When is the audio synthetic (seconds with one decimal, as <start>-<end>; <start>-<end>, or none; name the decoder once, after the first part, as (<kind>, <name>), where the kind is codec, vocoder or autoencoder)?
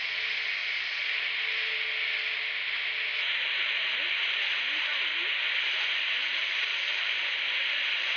none